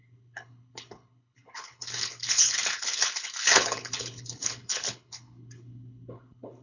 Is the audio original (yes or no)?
no